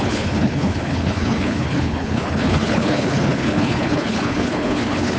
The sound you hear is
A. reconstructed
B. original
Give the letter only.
A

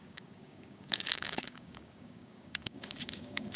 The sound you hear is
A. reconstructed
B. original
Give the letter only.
A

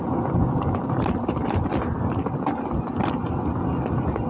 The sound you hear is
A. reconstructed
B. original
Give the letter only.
B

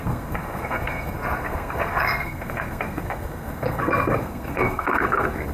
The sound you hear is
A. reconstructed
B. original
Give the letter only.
A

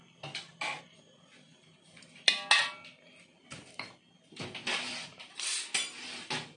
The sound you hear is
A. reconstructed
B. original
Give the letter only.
B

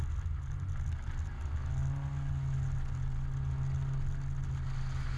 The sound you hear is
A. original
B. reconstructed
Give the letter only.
A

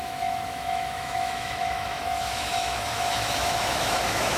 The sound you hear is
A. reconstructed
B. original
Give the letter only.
A